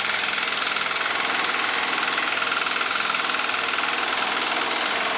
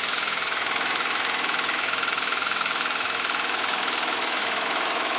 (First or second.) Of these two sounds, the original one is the first